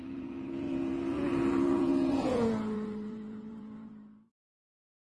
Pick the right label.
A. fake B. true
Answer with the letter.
A